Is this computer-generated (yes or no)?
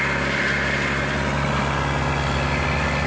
no